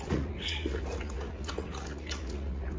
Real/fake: fake